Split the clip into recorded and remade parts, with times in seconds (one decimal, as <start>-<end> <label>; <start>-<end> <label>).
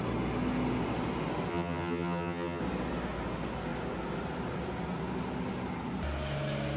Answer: 0.0-1.5 recorded; 1.5-2.6 remade; 2.6-6.8 recorded